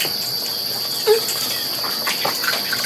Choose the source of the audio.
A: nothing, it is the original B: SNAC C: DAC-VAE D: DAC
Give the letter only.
A